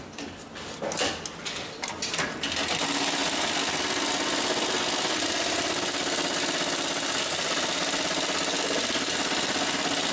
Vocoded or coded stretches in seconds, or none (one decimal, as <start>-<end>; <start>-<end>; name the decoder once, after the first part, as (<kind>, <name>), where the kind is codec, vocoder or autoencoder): none